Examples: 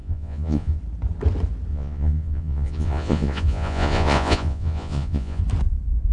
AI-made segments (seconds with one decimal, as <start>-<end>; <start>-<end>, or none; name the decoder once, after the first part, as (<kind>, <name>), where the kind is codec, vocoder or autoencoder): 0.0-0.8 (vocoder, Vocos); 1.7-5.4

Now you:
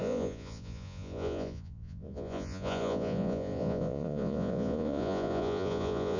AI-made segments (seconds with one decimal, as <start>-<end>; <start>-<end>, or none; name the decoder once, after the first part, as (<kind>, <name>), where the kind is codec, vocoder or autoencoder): 0.0-6.2 (vocoder, Vocos)

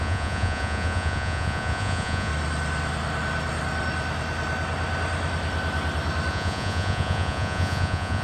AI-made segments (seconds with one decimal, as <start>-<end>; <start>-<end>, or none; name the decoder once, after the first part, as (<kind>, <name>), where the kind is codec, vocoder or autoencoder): 0.0-2.3 (vocoder, Vocos); 6.3-8.2

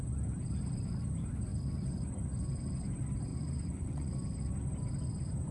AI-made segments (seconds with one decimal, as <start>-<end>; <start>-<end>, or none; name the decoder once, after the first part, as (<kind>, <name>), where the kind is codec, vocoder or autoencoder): 3.3-4.1 (vocoder, Vocos)

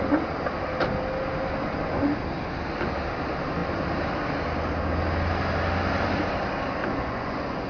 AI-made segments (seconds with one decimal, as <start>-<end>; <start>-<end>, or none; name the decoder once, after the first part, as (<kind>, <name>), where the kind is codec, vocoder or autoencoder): 6.8-7.7 (vocoder, Vocos)

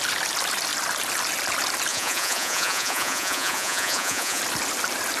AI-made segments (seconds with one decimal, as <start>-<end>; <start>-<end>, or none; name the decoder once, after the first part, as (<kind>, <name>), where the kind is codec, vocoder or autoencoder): 1.9-4.4 (vocoder, Vocos)